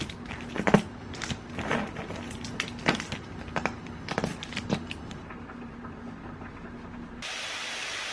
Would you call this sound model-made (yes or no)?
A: yes